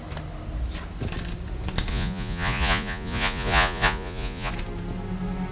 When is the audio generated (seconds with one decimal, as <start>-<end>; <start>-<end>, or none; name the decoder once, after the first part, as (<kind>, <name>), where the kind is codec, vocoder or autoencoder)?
1.9-4.5 (vocoder, Vocos)